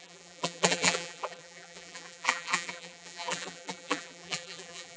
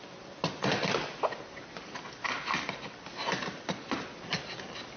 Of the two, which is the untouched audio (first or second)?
second